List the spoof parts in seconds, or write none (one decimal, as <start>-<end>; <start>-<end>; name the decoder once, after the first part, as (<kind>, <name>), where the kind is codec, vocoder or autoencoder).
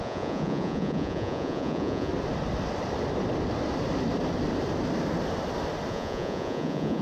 0.0-2.1 (vocoder, Vocos); 5.9-7.0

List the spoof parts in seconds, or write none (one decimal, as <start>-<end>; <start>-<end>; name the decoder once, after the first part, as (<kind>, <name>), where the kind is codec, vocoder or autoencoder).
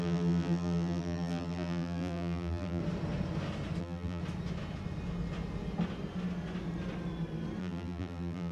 0.0-2.8 (vocoder, BigVGAN v2); 3.8-4.2; 7.6-8.5